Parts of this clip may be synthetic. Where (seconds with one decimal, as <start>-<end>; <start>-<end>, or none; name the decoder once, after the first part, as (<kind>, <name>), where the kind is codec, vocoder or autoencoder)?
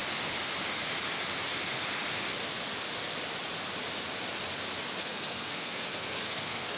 5.0-6.8 (codec, SNAC)